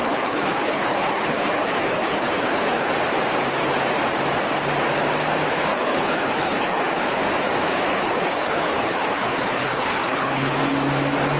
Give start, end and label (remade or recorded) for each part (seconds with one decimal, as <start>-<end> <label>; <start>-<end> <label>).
0.0-2.9 remade; 2.9-5.7 recorded; 5.7-7.2 remade; 7.2-7.9 recorded; 7.9-10.6 remade; 10.6-11.4 recorded